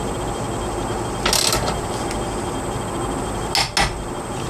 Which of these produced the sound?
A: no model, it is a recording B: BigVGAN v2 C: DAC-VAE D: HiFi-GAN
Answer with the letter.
A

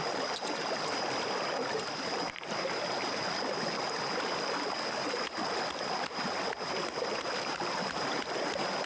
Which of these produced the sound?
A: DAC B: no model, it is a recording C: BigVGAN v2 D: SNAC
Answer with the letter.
B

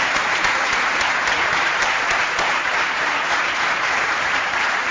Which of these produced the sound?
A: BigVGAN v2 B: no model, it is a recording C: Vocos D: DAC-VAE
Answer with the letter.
A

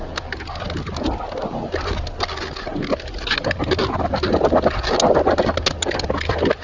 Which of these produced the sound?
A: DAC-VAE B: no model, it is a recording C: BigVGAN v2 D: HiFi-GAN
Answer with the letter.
B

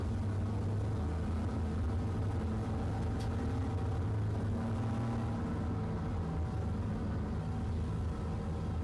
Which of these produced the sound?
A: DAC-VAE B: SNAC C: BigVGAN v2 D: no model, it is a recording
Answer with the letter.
D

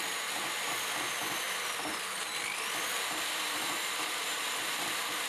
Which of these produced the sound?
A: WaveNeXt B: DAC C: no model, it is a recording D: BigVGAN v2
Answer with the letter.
D